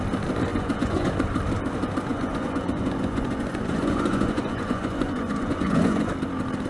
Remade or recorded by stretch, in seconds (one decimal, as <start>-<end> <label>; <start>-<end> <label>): 0.0-0.5 recorded; 0.5-1.1 remade; 1.1-2.1 recorded; 2.1-6.1 remade; 6.1-6.7 recorded